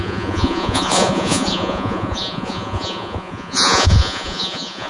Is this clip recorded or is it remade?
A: remade